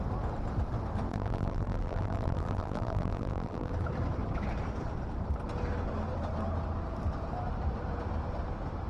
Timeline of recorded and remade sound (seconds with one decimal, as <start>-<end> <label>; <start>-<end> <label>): 0.0-1.1 recorded; 1.1-3.7 remade; 3.7-8.9 recorded